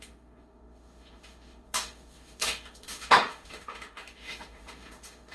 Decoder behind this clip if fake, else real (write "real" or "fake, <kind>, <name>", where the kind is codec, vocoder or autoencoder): fake, autoencoder, DAC-VAE